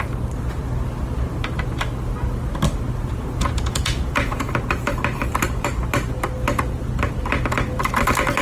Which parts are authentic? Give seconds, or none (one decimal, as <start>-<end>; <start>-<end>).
0.0-3.1; 4.5-8.4